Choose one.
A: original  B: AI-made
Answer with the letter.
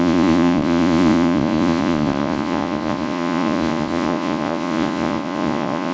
B